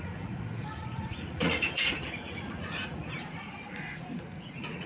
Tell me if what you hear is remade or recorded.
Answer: remade